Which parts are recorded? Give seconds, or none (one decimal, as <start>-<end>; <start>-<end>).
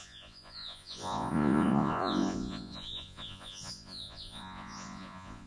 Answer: none